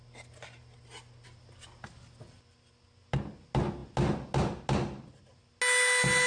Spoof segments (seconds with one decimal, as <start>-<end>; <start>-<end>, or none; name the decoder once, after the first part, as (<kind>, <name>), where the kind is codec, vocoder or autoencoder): none